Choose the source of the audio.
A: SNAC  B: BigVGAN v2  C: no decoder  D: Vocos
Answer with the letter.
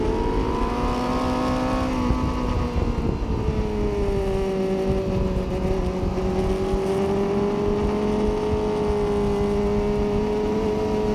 C